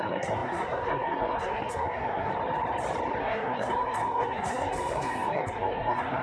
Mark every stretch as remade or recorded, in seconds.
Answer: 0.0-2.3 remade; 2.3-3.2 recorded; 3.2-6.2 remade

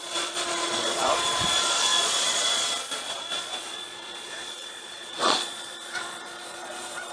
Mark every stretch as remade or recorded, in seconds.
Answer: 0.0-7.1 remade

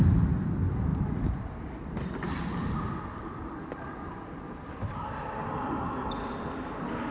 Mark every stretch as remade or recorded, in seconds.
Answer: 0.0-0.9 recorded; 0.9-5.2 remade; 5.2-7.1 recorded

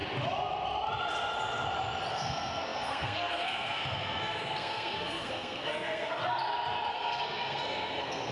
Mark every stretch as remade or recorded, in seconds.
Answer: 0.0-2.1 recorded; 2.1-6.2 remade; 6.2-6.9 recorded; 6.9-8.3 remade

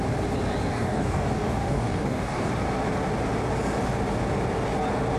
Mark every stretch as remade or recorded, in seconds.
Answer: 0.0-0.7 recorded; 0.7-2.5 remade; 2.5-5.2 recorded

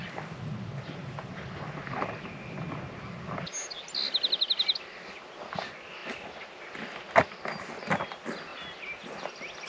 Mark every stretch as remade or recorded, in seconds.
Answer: 0.0-9.7 recorded